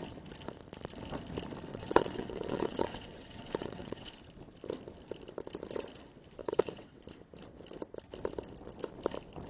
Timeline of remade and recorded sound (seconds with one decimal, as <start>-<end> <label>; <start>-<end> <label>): 0.0-1.7 recorded; 1.7-4.1 remade; 4.1-6.4 recorded; 6.4-7.0 remade; 7.0-9.5 recorded